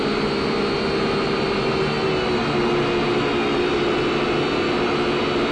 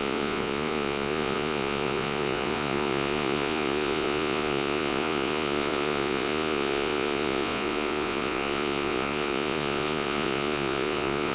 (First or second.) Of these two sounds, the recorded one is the first